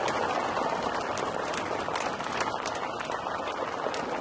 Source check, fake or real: real